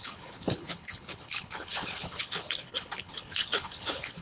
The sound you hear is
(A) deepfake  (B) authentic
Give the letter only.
A